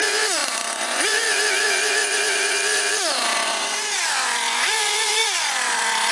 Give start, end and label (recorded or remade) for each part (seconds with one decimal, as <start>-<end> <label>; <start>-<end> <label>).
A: 0.0-6.1 remade